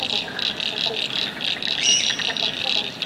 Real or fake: real